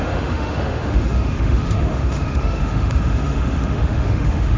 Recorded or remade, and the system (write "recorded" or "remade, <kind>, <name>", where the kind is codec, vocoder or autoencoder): remade, autoencoder, DAC-VAE